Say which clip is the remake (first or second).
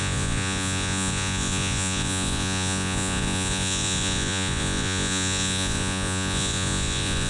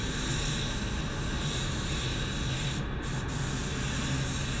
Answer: first